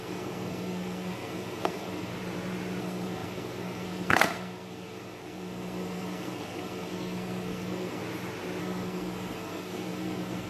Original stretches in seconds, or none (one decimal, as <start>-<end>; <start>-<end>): 2.1-2.8; 8.0-8.6